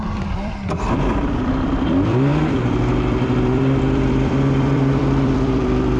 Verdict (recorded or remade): remade